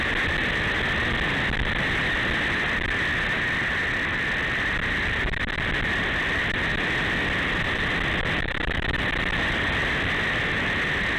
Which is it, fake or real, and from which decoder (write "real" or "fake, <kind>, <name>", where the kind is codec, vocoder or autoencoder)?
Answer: real